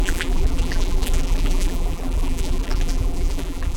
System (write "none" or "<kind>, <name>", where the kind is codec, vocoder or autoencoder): vocoder, BigVGAN v2